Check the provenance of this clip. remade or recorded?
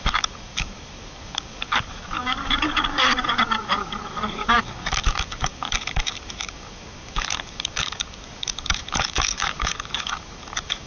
remade